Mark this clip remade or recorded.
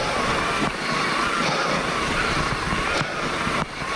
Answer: recorded